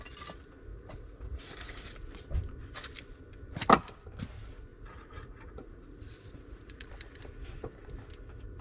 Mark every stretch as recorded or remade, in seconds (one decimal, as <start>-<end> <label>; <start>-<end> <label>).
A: 0.0-0.7 recorded; 0.7-1.9 remade; 1.9-4.7 recorded; 4.7-6.9 remade; 6.9-8.6 recorded